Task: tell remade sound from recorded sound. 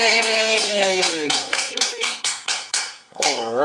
remade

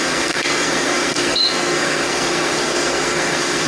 remade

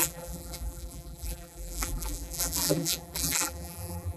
remade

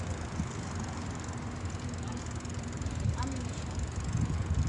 recorded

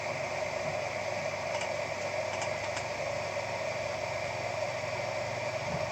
recorded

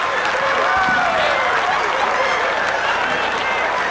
recorded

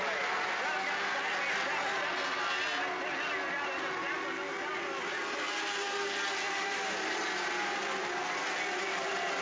recorded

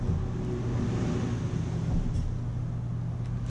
recorded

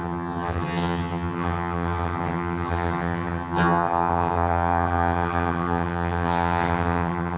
remade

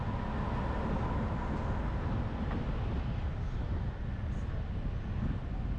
recorded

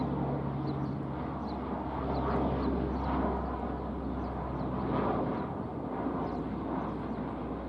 recorded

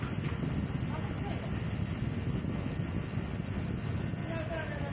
recorded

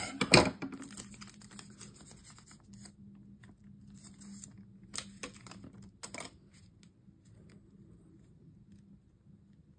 recorded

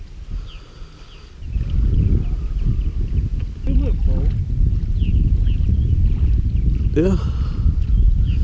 recorded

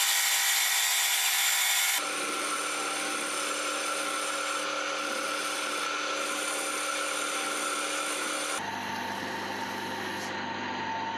recorded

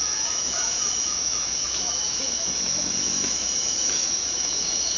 remade